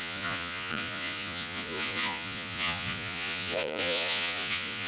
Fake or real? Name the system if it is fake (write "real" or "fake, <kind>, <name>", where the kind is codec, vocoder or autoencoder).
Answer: fake, vocoder, Vocos